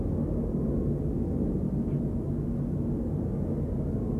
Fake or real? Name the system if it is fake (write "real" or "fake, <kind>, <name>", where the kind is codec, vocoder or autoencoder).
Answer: real